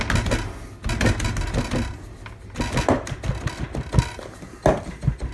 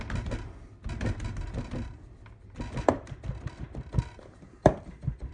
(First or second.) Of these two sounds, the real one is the first